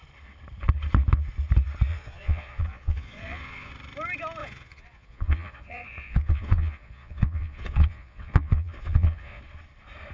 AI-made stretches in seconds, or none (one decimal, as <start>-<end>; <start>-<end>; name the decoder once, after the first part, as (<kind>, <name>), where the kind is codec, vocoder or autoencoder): 1.9-3.7 (vocoder, Vocos); 4.4-9.4